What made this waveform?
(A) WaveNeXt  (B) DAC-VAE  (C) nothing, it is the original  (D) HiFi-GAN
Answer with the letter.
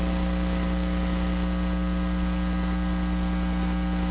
C